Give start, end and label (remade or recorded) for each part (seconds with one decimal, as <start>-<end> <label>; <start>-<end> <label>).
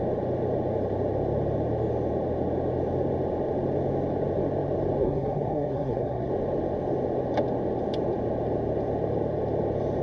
0.0-5.0 recorded; 5.0-6.3 remade; 6.3-10.0 recorded